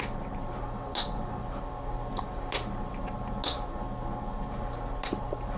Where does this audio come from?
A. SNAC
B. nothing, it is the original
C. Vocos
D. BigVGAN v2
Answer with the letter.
B